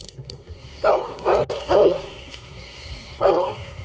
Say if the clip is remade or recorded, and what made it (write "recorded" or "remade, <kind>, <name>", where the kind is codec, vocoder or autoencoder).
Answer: remade, codec, SNAC